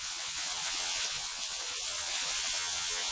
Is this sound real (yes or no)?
no